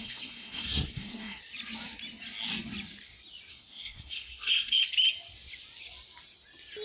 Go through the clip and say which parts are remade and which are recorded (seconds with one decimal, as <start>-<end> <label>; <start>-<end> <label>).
0.0-1.4 remade; 1.4-3.5 recorded; 3.5-4.8 remade; 4.8-6.8 recorded